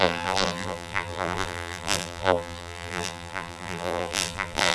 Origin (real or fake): fake